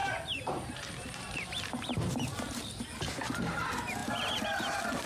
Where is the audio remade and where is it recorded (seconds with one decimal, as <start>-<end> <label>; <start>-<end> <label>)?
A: 0.0-2.6 remade; 2.6-4.0 recorded; 4.0-5.1 remade